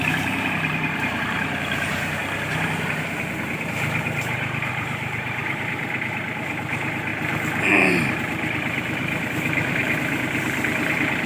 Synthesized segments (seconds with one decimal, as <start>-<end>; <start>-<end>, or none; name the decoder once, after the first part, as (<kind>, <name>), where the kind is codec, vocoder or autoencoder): 0.0-7.1 (vocoder, BigVGAN v2); 7.9-11.3